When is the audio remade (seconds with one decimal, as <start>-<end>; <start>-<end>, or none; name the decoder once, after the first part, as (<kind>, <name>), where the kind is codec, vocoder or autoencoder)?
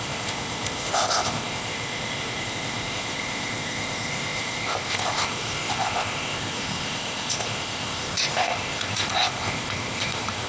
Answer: 0.0-10.5 (codec, ZipCodec)